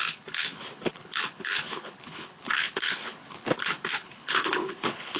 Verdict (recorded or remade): remade